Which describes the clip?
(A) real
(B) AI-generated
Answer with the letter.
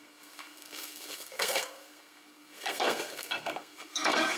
B